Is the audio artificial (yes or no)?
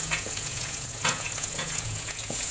yes